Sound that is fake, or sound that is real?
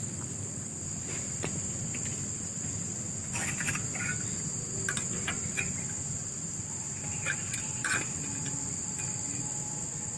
real